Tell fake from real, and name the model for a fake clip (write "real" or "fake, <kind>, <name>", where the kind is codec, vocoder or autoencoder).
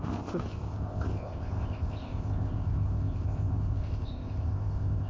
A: fake, codec, ZipCodec